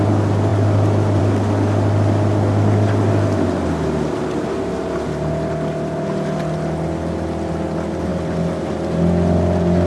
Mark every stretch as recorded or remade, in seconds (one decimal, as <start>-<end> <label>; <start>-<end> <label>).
0.0-9.9 recorded

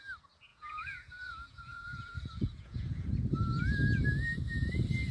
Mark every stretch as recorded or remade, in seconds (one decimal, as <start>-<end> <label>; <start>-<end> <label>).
0.0-0.5 recorded; 0.5-3.1 remade; 3.1-5.1 recorded

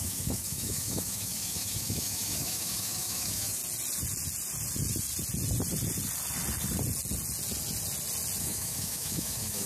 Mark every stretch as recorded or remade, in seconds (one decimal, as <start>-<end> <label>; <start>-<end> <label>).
0.0-3.6 remade; 3.6-8.4 recorded; 8.4-9.7 remade